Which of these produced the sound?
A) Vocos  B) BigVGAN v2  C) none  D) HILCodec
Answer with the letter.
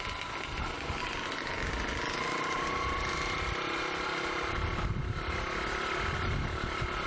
C